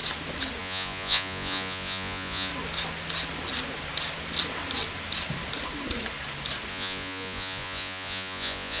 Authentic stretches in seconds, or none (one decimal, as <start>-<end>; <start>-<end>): 0.0-0.6; 2.5-6.7